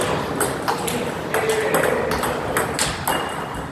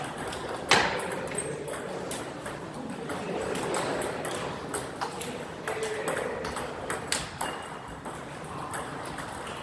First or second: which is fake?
second